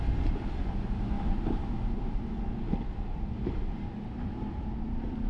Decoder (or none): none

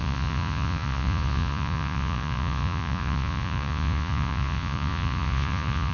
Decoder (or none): vocoder, Vocos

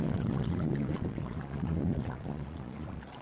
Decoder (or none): vocoder, Vocos